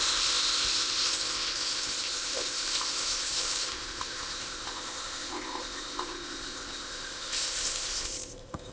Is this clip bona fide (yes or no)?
no